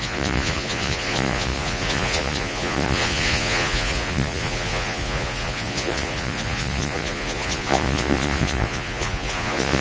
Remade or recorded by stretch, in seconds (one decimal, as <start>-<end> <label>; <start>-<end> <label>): 0.0-9.8 remade

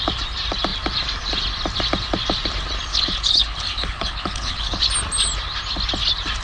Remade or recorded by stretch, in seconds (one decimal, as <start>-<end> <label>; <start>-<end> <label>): 0.0-2.9 recorded; 2.9-4.8 remade; 4.8-6.4 recorded

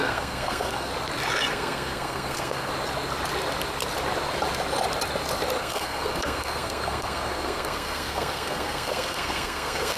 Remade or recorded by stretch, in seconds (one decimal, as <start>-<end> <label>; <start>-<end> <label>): 0.0-0.9 remade; 0.9-1.5 recorded; 1.5-2.7 remade; 2.7-5.6 recorded; 5.6-10.0 remade

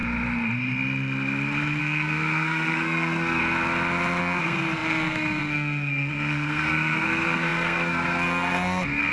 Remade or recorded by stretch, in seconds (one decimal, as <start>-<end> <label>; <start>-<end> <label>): 0.0-1.8 recorded; 1.8-3.4 remade; 3.4-4.2 recorded; 4.2-9.1 remade

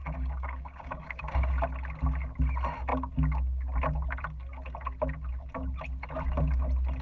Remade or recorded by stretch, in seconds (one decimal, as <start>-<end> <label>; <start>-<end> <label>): 0.0-1.5 remade; 1.5-7.0 recorded